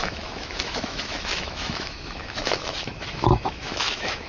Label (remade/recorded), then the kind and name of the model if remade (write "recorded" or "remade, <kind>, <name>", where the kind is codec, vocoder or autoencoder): remade, autoencoder, DAC-VAE